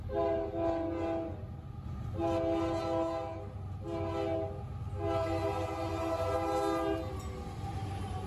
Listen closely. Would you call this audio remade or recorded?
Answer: recorded